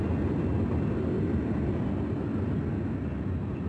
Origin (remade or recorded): recorded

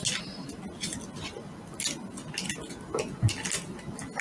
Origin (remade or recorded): recorded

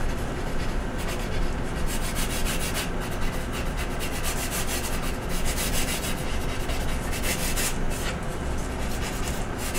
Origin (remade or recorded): recorded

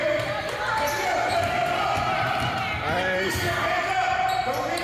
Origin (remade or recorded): recorded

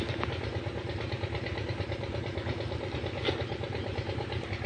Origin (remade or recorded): recorded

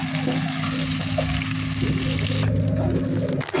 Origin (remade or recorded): recorded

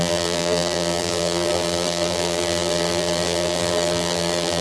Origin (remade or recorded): remade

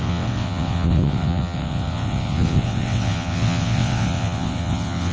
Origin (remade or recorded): remade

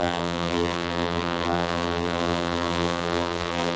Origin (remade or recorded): remade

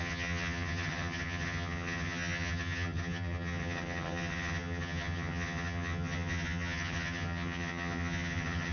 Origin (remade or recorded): remade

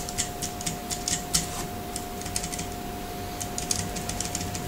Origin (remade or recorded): recorded